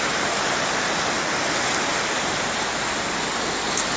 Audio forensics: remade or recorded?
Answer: recorded